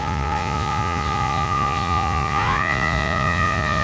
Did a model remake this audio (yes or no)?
yes